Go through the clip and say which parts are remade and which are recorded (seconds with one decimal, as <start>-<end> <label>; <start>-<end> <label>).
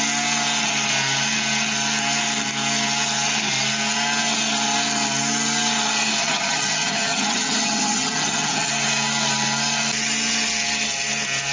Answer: 0.0-6.2 recorded; 6.2-8.7 remade; 8.7-11.5 recorded